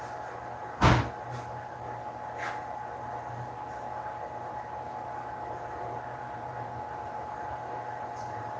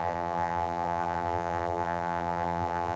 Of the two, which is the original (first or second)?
first